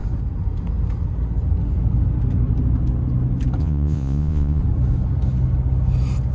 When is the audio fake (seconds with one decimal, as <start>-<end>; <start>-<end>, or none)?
3.6-4.6

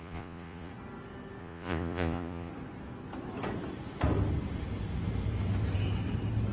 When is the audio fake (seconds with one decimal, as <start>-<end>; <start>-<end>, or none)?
0.0-0.7; 1.4-2.5

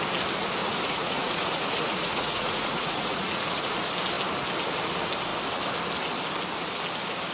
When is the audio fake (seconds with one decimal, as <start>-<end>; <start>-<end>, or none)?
0.6-3.8

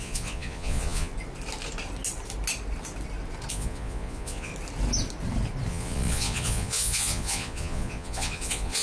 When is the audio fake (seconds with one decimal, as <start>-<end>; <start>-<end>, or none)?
0.0-1.1; 3.5-4.5; 5.7-8.8

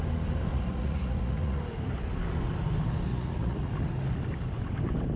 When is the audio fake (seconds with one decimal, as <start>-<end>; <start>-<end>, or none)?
0.5-1.6; 3.1-3.7

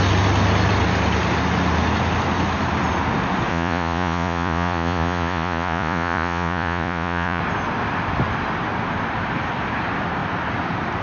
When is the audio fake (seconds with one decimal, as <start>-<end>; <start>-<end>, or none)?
3.5-7.4

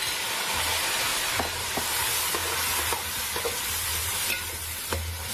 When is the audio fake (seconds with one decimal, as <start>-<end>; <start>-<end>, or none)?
none